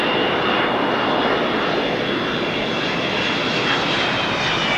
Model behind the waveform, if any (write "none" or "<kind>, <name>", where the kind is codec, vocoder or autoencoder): none